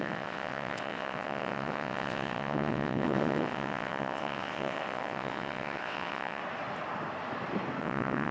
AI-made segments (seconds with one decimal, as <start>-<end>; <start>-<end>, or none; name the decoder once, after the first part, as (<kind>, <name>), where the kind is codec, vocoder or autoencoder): 0.0-6.4 (vocoder, WaveNeXt); 7.8-8.3